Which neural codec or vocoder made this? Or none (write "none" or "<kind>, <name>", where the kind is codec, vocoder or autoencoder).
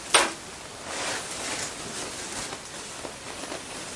none